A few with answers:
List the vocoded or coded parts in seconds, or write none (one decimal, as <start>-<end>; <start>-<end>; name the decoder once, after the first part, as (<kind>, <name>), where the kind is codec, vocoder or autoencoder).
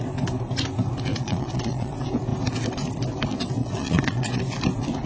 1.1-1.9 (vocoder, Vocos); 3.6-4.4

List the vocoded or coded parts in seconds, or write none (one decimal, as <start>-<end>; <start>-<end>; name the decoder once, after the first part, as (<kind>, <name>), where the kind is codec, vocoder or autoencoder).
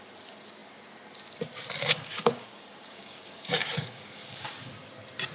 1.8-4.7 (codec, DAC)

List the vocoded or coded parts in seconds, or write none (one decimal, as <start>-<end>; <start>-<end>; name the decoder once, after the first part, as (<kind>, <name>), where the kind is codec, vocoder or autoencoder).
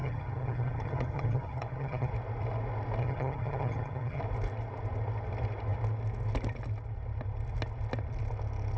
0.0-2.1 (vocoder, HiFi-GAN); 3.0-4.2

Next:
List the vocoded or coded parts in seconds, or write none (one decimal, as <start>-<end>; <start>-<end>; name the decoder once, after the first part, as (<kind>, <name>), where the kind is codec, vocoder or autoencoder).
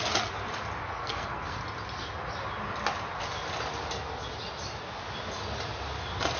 1.0-1.6 (codec, SNAC)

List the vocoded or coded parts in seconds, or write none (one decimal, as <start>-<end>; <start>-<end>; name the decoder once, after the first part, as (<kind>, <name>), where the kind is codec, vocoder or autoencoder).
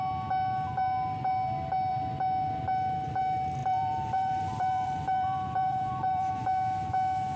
3.6-6.3 (vocoder, BigVGAN v2)